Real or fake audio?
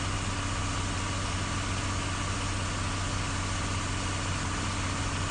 real